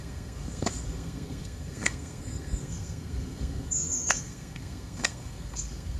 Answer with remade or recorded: remade